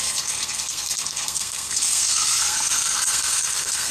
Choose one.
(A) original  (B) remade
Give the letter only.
B